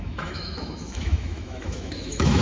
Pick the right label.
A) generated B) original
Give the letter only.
A